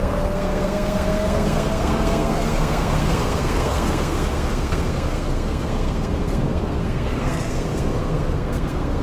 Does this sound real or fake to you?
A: fake